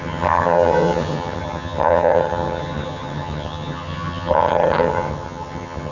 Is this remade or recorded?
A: remade